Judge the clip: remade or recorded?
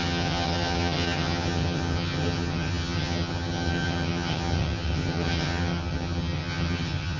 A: remade